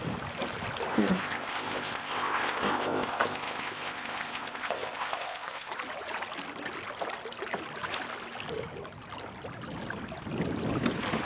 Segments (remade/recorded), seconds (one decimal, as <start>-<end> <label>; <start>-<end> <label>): 0.0-0.9 recorded; 0.9-5.7 remade; 5.7-11.3 recorded